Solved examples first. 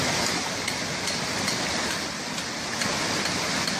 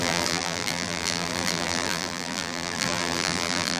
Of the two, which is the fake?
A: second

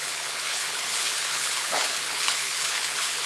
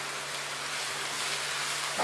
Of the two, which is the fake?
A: first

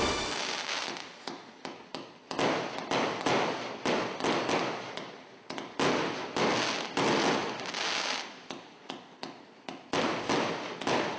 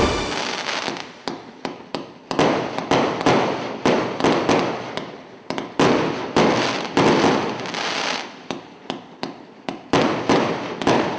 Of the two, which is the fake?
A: second